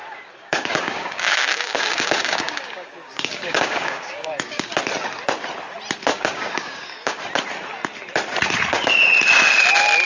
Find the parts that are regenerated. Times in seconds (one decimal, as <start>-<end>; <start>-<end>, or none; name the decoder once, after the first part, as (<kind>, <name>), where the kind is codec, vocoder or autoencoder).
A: 0.0-4.8 (codec, DAC); 6.1-7.2